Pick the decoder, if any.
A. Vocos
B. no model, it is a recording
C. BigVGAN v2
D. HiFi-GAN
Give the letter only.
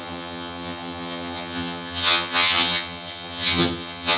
D